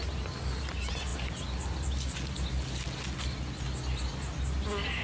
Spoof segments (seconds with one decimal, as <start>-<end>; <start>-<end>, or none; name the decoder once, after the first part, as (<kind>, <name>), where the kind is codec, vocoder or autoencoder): none